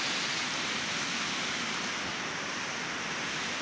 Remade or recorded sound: recorded